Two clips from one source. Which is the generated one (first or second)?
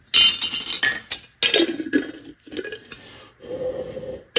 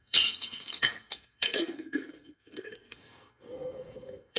second